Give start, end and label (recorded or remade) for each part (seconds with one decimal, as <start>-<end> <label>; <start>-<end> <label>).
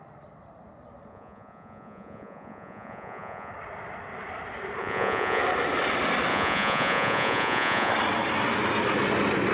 0.0-1.1 recorded; 1.1-3.5 remade; 3.5-4.8 recorded; 4.8-5.4 remade; 5.4-6.3 recorded; 6.3-7.9 remade; 7.9-9.5 recorded